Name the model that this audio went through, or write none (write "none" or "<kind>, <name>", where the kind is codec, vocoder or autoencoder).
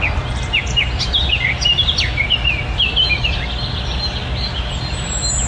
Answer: none